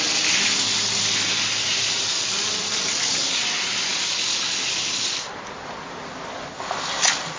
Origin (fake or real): real